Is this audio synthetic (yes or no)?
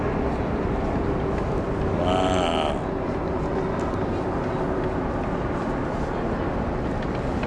no